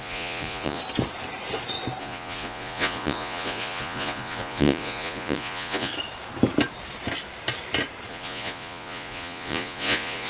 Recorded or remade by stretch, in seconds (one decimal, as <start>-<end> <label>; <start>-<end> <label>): 0.0-0.8 remade; 0.8-2.0 recorded; 2.0-5.9 remade; 5.9-8.1 recorded; 8.1-10.3 remade